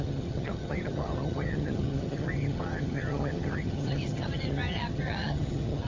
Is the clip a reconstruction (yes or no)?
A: yes